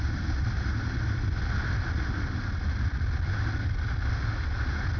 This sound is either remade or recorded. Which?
recorded